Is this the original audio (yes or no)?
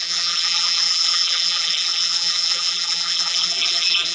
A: no